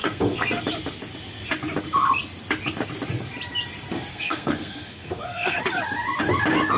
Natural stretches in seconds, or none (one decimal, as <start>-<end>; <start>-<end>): 0.6-4.1; 5.6-6.8